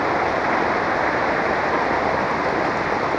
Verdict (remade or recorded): recorded